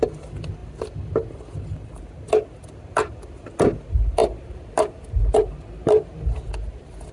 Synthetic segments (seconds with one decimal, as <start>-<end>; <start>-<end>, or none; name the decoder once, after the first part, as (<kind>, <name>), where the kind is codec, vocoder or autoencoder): 4.2-6.3 (vocoder, BigVGAN v2)